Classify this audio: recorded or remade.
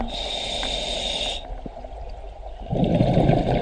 recorded